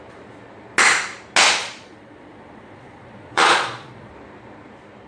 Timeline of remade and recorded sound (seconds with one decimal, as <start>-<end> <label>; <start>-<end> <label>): 0.0-1.6 recorded; 1.6-4.1 remade; 4.1-5.1 recorded